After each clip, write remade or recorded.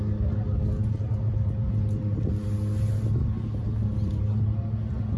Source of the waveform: recorded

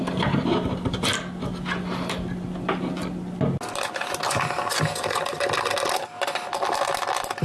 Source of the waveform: recorded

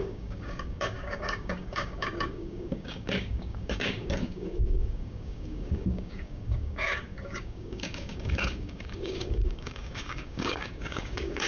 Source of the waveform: remade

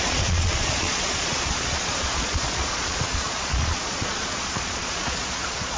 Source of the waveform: remade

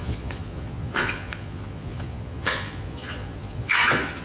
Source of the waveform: remade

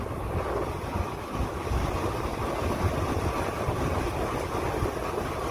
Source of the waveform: recorded